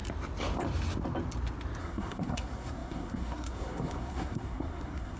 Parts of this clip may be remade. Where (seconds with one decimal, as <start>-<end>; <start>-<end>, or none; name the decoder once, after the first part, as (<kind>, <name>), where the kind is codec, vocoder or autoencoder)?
1.8-5.2 (codec, SNAC)